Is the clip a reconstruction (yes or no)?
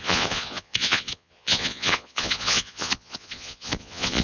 yes